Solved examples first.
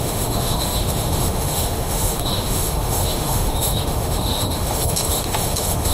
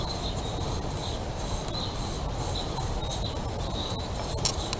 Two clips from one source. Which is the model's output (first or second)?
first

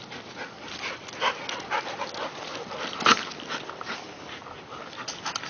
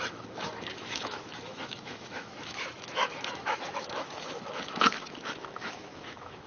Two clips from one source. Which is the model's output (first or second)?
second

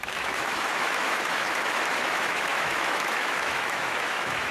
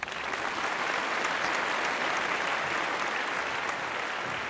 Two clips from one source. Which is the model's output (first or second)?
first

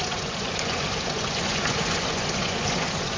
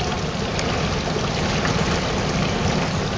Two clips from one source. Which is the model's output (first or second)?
first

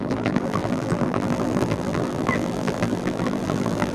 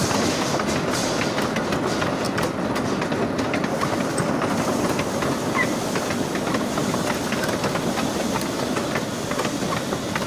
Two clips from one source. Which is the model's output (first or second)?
first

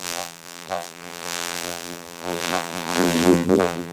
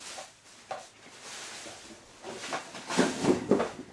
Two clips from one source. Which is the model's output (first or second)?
first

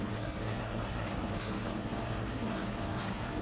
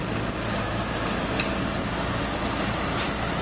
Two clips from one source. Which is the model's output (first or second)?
first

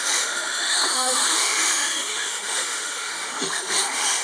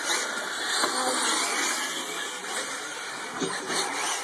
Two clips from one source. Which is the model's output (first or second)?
first